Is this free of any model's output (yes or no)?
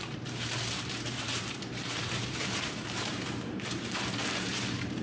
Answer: no